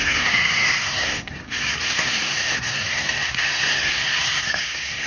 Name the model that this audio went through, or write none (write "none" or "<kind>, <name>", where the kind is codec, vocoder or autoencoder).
codec, SNAC